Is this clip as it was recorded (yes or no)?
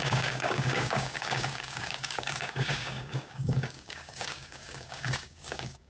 no